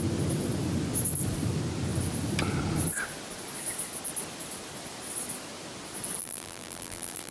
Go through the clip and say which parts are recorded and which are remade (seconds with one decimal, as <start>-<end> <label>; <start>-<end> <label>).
0.0-6.2 recorded; 6.2-7.3 remade